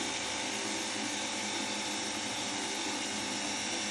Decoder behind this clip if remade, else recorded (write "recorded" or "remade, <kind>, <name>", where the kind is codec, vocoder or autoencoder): recorded